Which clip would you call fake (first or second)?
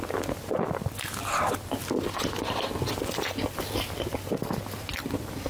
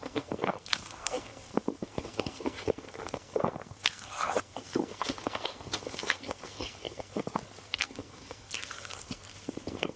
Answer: second